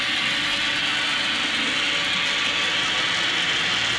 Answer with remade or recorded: recorded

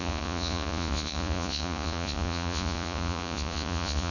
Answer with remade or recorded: remade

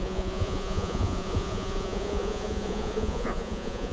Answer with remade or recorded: remade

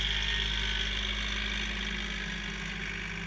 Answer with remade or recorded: recorded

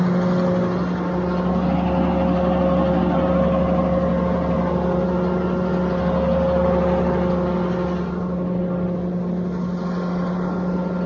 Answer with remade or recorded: recorded